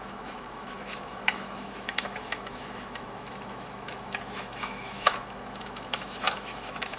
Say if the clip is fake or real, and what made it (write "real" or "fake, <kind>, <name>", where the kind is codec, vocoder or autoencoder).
fake, autoencoder, DAC-VAE